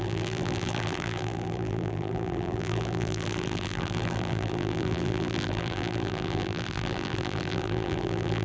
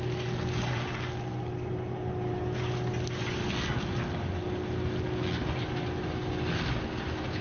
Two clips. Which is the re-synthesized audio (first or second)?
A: first